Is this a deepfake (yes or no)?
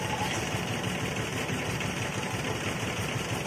no